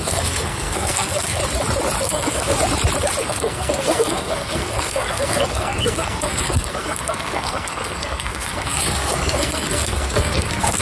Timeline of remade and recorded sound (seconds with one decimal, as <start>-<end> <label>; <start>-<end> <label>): 0.0-1.4 remade; 1.4-2.0 recorded; 2.0-2.5 remade; 2.5-3.2 recorded; 3.2-10.8 remade